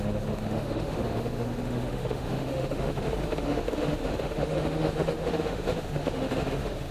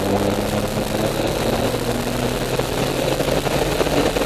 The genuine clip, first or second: second